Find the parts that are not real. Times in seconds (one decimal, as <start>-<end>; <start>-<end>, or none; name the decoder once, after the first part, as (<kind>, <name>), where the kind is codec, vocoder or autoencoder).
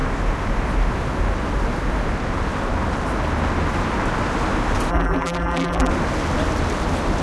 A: 4.9-5.9 (vocoder, BigVGAN v2)